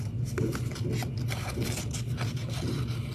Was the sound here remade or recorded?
recorded